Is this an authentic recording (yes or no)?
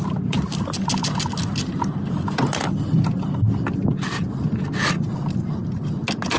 yes